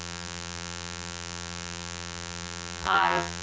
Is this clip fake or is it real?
fake